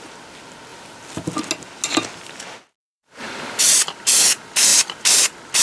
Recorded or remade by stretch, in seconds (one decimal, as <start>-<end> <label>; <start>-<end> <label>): 0.0-0.7 recorded; 0.7-1.3 remade; 1.3-2.8 recorded; 2.8-3.6 remade; 3.6-5.6 recorded